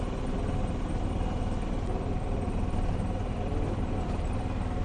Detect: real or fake fake